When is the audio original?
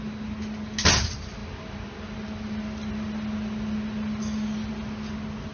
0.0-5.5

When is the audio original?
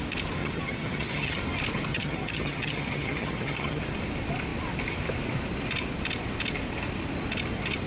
0.0-0.4; 1.4-1.9; 3.8-7.9